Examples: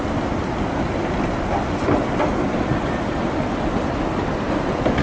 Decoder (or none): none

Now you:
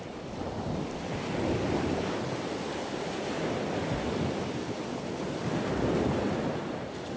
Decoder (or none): none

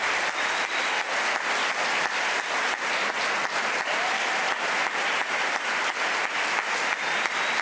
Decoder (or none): none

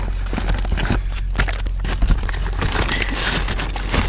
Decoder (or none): none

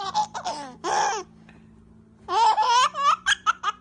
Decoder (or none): none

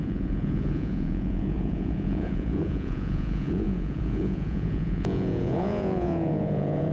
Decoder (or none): vocoder, Vocos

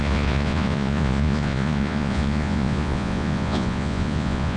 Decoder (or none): vocoder, Vocos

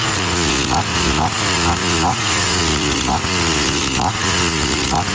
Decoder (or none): vocoder, Vocos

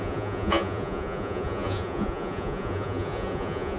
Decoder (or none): vocoder, Vocos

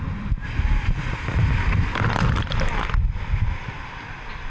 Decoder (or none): none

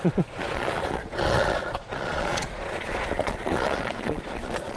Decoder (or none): vocoder, Vocos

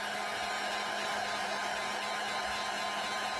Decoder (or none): none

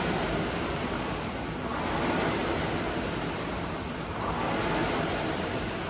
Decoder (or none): none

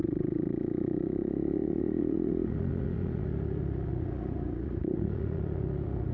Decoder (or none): vocoder, Vocos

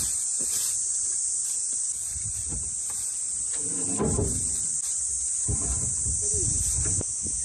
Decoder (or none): none